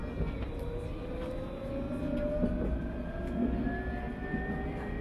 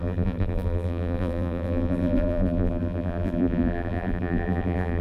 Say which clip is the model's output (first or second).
second